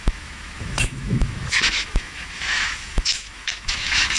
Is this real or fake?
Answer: fake